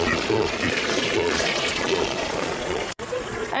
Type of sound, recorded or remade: remade